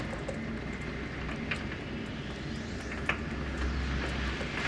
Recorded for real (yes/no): yes